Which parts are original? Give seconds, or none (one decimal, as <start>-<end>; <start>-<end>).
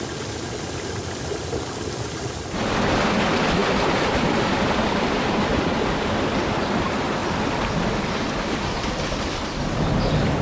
0.0-10.4